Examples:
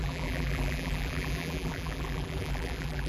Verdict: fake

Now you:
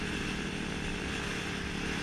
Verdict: real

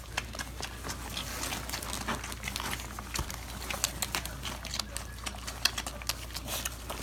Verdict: real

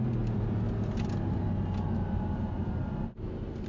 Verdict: real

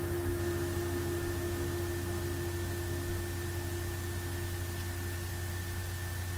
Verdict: real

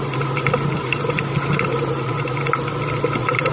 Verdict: real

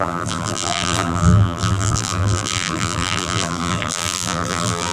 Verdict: fake